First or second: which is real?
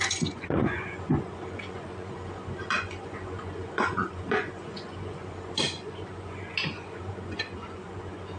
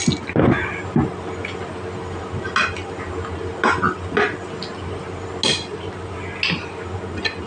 second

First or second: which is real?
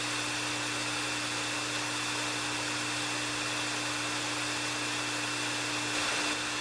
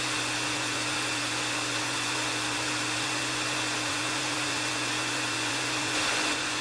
first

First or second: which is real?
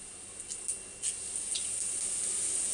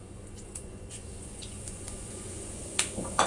first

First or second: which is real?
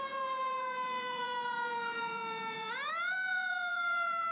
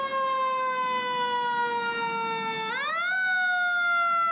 second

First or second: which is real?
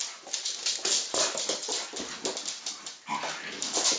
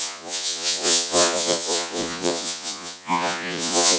first